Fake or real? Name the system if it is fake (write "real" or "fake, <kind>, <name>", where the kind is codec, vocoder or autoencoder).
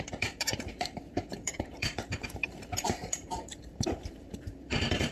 fake, vocoder, BigVGAN v2